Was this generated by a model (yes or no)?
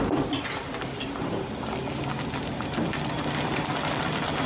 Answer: no